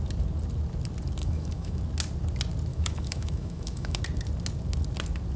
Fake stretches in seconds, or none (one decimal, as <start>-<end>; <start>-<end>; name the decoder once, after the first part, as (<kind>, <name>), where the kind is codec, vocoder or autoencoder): 1.2-1.8 (autoencoder, DAC-VAE); 2.7-4.0